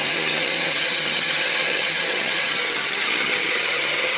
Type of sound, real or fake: fake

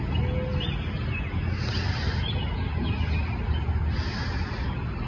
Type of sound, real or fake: real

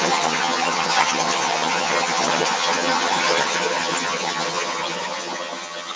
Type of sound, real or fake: fake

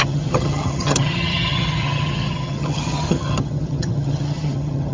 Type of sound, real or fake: fake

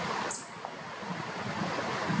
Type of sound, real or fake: real